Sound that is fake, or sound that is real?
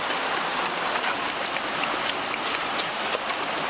real